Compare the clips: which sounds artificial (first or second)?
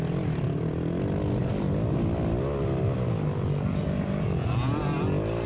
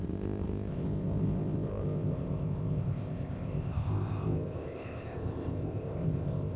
second